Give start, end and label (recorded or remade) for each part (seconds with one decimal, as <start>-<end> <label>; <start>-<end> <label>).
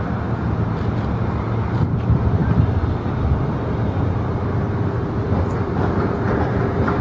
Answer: 0.0-7.0 recorded